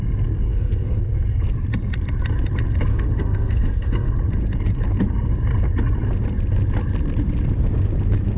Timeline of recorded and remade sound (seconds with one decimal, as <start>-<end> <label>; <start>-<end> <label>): 0.0-0.5 recorded; 0.5-1.0 remade; 1.0-2.9 recorded; 2.9-4.1 remade; 4.1-8.4 recorded